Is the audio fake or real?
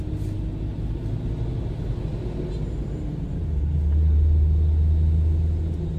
real